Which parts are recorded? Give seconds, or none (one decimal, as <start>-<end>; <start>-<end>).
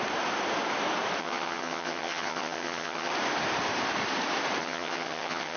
0.0-1.2; 3.1-4.6